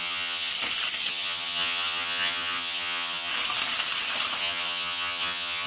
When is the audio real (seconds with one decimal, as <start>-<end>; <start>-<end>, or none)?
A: 0.5-1.1; 3.3-4.4